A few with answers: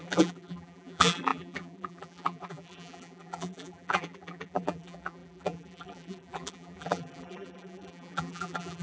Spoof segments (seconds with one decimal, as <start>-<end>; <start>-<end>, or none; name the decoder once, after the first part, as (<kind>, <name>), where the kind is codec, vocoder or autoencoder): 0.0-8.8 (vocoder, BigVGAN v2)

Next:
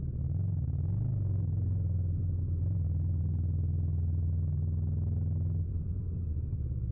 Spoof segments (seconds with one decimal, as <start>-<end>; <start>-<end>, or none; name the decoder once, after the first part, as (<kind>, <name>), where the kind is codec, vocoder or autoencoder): 5.7-6.9 (vocoder, BigVGAN v2)

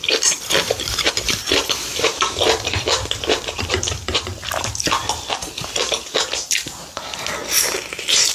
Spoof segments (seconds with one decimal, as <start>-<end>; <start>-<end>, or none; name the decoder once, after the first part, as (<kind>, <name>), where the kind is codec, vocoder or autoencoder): 0.0-4.3 (vocoder, BigVGAN v2); 7.0-7.4; 7.9-8.3

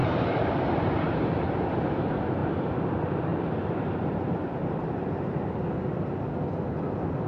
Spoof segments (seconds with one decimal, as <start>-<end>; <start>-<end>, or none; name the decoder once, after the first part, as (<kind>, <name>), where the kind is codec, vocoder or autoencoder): 0.0-1.2 (vocoder, BigVGAN v2); 3.3-4.9

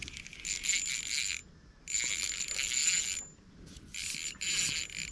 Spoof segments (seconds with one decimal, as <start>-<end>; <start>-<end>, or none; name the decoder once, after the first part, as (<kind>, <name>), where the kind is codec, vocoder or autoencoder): none